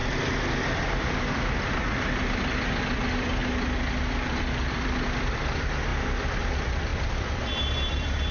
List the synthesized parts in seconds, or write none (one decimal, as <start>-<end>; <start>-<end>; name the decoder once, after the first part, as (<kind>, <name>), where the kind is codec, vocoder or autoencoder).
0.7-3.4 (vocoder, BigVGAN v2); 4.7-5.9; 6.4-8.3